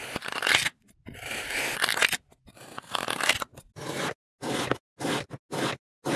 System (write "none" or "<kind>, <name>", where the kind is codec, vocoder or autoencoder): none